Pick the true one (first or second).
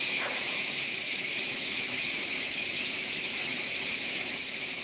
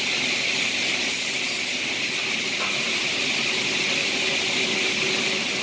second